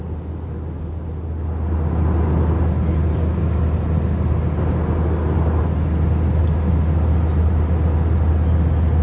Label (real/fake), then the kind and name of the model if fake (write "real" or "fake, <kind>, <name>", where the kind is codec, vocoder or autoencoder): real